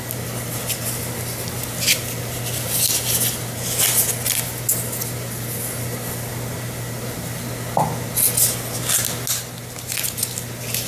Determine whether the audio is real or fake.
real